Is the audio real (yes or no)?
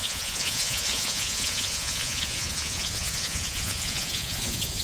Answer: no